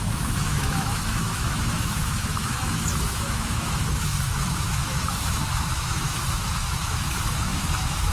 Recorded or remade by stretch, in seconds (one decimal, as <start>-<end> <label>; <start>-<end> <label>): 0.0-8.1 remade